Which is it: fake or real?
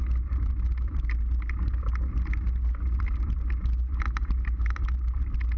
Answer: real